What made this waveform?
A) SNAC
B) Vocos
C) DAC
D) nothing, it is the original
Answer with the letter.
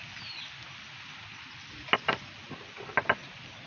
D